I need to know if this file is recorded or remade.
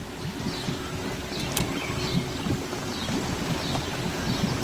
recorded